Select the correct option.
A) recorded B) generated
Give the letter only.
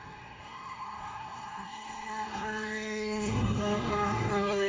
B